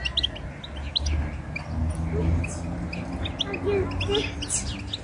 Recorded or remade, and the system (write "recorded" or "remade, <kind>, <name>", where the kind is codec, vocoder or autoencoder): recorded